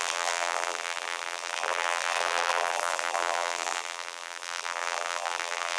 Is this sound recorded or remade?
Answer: remade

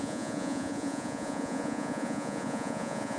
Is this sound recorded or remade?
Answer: remade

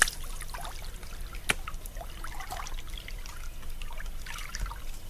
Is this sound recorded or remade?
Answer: recorded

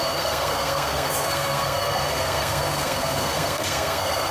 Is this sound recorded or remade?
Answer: remade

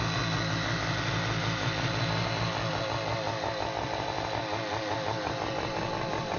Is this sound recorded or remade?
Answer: recorded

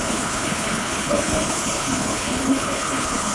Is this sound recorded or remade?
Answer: remade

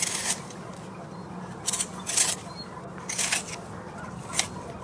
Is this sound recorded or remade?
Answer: recorded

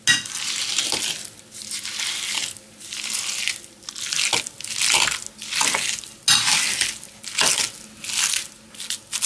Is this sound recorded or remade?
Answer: recorded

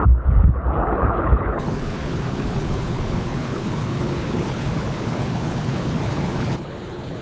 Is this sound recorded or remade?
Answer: remade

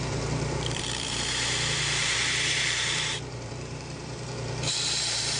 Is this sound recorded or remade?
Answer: remade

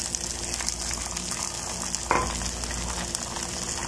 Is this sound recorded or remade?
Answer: recorded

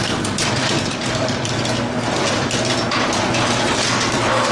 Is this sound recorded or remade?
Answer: remade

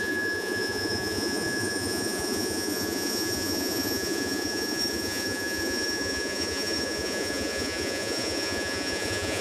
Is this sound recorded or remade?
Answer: remade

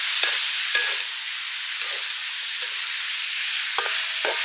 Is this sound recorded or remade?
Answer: recorded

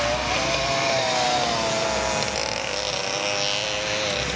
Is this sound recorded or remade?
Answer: recorded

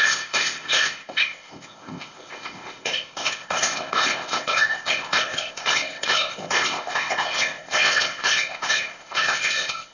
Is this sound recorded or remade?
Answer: remade